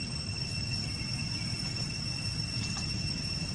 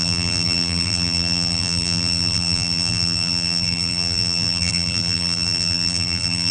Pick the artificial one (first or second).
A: second